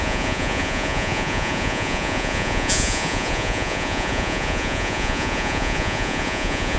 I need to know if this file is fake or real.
fake